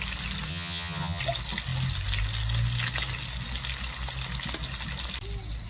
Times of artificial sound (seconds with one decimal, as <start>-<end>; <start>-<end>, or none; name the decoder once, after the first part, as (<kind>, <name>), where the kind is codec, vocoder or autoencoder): 0.5-1.2 (vocoder, HiFi-GAN)